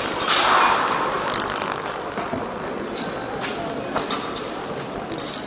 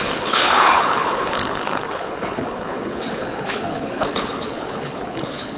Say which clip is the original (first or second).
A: first